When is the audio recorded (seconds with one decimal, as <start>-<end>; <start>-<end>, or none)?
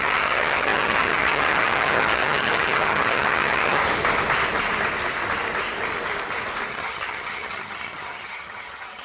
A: 3.8-6.7